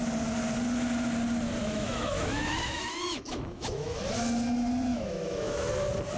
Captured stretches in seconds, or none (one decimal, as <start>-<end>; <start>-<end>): 0.0-1.6; 4.0-4.9; 5.7-6.2